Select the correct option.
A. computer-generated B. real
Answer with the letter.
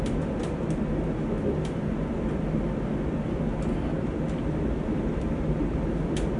B